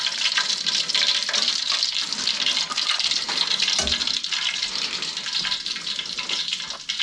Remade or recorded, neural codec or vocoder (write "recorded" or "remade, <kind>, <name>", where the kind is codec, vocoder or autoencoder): recorded